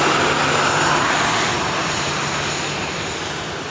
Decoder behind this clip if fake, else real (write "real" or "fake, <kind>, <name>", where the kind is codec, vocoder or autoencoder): real